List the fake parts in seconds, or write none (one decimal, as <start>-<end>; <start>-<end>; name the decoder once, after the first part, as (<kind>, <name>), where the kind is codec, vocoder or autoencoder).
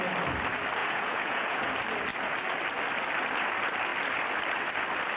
0.8-1.7 (vocoder, Vocos)